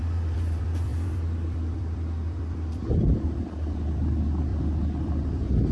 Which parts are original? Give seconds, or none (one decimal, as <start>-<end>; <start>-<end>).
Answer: none